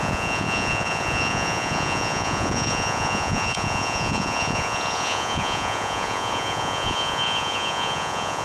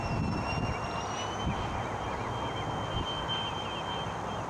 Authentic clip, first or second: second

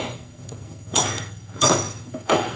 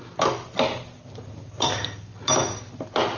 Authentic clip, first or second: second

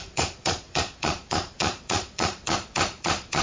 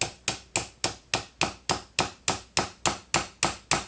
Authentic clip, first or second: second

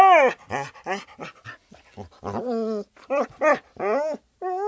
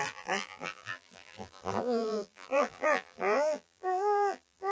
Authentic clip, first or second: first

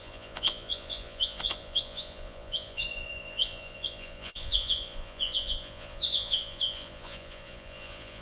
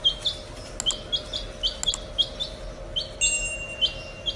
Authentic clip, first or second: second